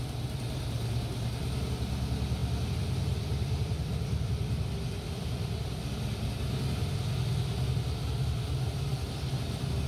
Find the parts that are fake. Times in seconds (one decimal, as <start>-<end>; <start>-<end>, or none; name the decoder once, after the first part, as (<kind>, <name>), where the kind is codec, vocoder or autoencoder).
2.4-6.3 (vocoder, BigVGAN v2)